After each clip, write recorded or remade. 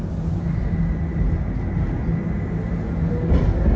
recorded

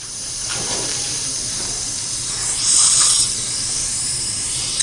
remade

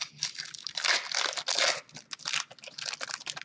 recorded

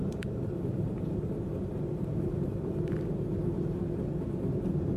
remade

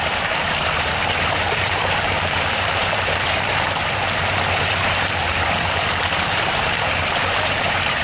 remade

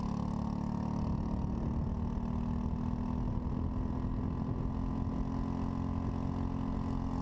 recorded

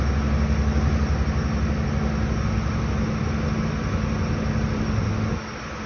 recorded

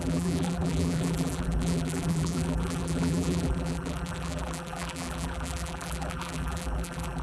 remade